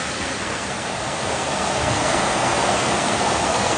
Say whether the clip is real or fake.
fake